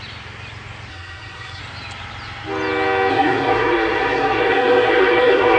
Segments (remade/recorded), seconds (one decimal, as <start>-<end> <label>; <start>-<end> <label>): 0.0-0.9 recorded; 0.9-1.6 remade; 1.6-3.1 recorded; 3.1-5.6 remade